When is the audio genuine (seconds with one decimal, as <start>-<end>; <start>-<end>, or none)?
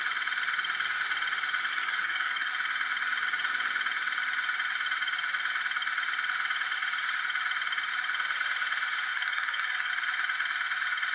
0.0-1.7; 2.5-9.1; 9.9-11.1